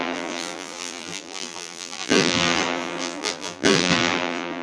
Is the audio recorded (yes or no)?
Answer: no